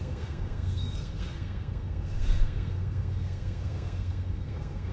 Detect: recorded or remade remade